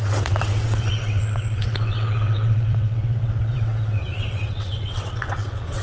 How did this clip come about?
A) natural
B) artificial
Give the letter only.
B